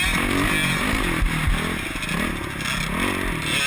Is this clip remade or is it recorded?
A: recorded